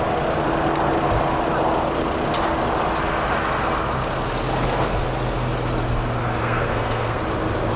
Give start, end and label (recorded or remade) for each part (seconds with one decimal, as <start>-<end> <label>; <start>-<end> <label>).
0.0-6.4 recorded; 6.4-7.2 remade; 7.2-7.8 recorded